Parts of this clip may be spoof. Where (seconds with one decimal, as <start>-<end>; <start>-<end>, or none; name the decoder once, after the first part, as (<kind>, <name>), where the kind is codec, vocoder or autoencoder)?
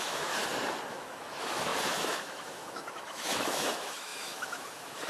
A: 0.0-0.4 (autoencoder, DAC-VAE); 0.9-5.1